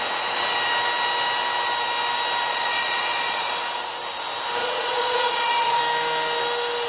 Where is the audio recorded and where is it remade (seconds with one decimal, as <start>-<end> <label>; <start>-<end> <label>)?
0.0-2.5 recorded; 2.5-3.5 remade; 3.5-4.6 recorded; 4.6-5.8 remade; 5.8-6.9 recorded